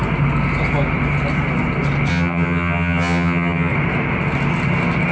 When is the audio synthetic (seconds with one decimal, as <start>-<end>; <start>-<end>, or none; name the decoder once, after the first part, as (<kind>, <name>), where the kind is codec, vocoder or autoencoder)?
2.1-3.7 (vocoder, HiFi-GAN)